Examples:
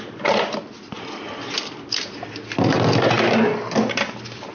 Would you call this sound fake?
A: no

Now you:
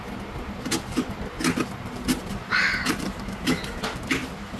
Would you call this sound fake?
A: no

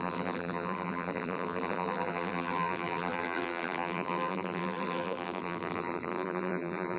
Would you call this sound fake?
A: yes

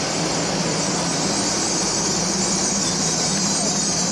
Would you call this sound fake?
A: yes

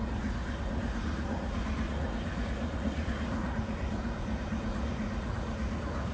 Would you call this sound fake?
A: yes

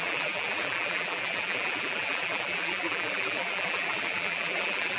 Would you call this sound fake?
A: yes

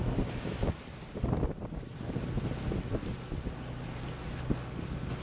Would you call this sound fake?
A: no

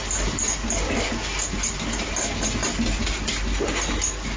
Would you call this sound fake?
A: no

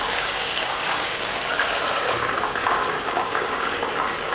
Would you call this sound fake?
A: yes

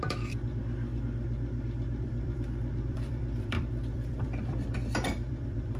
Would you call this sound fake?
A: yes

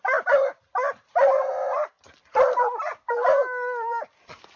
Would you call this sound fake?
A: no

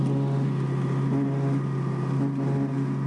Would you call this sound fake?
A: no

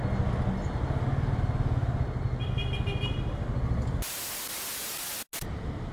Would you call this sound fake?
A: no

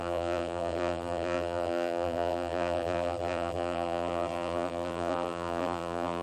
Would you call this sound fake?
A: yes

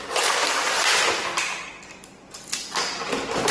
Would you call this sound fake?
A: no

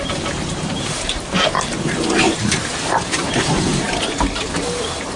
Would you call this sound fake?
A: yes